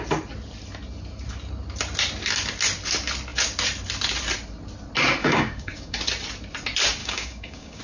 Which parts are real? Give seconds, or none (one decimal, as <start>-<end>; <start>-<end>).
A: 0.0-5.2; 6.0-7.0